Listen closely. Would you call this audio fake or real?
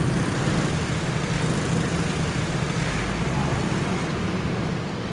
real